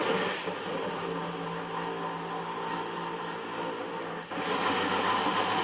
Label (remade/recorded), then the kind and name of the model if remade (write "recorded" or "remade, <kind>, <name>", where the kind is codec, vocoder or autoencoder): recorded